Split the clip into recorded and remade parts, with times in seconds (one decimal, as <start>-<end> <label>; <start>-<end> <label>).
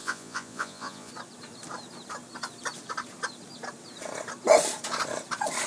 0.0-1.1 remade; 1.1-5.7 recorded